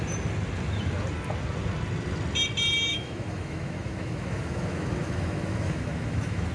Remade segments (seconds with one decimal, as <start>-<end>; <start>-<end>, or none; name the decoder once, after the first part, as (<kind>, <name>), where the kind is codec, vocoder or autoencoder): 2.9-6.5 (autoencoder, DAC-VAE)